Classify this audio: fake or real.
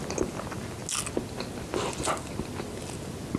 real